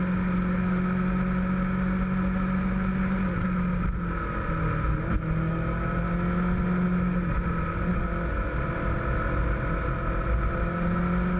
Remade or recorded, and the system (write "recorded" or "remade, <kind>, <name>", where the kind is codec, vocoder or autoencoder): recorded